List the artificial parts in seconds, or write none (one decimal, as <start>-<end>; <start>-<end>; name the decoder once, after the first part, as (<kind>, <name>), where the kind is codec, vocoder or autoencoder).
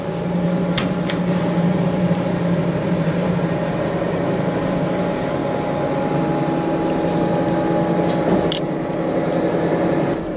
0.0-5.4 (vocoder, BigVGAN v2); 8.5-10.4